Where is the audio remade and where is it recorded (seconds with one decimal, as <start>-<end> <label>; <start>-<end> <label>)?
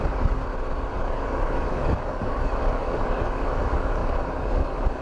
0.0-0.4 remade; 0.4-0.9 recorded; 0.9-5.0 remade